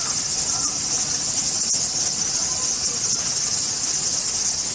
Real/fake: real